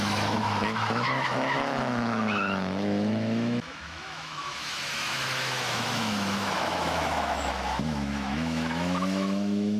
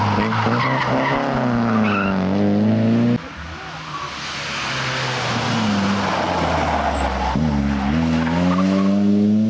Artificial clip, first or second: first